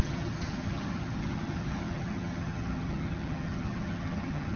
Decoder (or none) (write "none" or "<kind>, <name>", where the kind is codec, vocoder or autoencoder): vocoder, HiFi-GAN